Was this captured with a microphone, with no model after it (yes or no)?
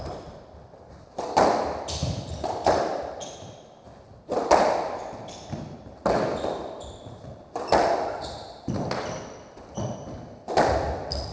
yes